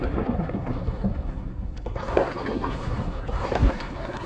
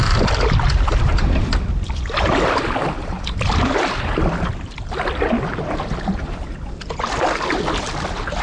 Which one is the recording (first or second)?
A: second